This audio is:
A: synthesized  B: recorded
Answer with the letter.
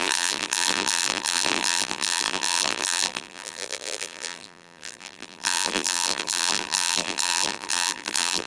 A